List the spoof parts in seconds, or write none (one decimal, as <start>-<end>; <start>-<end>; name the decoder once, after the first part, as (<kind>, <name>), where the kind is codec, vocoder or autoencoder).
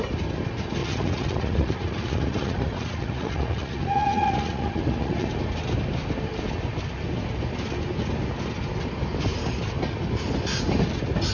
0.8-5.3 (vocoder, Vocos)